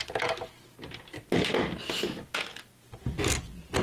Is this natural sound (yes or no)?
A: yes